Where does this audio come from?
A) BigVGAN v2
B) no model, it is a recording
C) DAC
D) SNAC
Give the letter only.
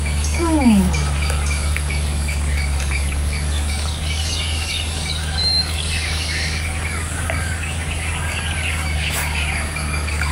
C